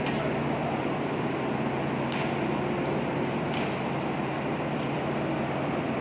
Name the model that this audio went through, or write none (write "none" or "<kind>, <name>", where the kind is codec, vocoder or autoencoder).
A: none